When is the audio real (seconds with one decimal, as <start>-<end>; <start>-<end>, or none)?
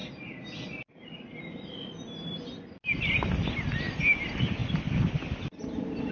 0.0-6.1